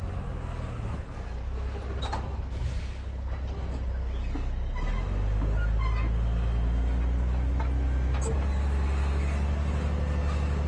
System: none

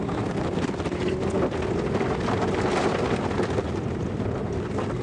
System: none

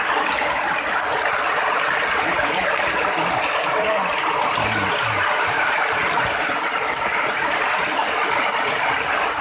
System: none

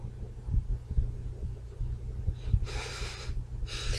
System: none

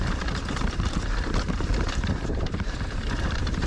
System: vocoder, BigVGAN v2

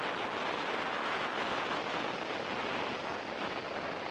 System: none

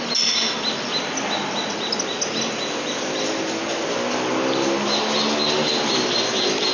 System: none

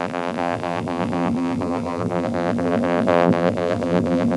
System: vocoder, BigVGAN v2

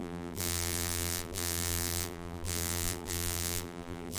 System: vocoder, BigVGAN v2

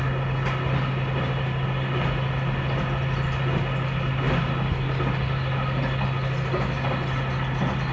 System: none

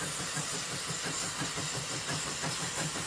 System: vocoder, BigVGAN v2